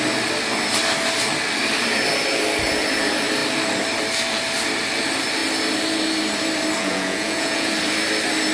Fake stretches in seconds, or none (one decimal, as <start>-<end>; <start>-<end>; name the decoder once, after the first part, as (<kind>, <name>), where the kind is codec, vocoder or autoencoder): 6.8-7.7 (vocoder, Vocos)